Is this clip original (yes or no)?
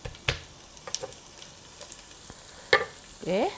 yes